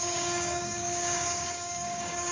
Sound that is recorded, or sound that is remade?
remade